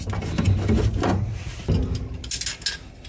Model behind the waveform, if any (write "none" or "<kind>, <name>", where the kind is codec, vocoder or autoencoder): none